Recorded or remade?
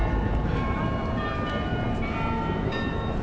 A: remade